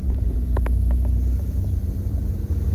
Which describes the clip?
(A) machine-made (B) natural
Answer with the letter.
A